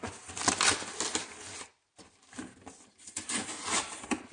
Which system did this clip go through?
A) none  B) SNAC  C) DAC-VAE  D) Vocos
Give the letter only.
A